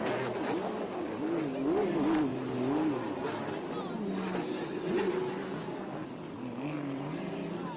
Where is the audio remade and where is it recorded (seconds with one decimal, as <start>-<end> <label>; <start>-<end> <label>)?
0.0-7.8 recorded